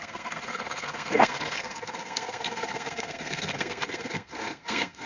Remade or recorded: remade